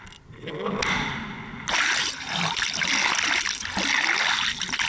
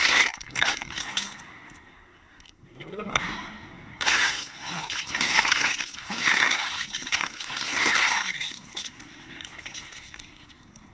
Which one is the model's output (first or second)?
second